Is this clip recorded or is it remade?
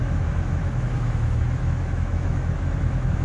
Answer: remade